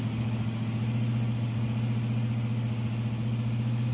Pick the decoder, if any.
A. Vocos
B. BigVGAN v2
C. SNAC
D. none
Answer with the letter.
D